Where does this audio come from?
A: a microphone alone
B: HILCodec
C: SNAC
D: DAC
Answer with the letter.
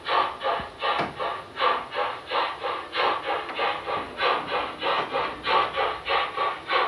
A